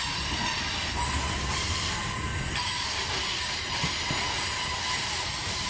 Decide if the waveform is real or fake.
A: real